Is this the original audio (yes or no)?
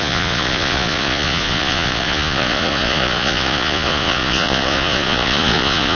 no